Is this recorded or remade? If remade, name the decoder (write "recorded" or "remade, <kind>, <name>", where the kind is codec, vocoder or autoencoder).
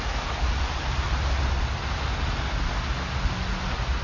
recorded